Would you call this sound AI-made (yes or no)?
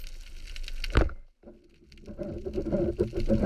no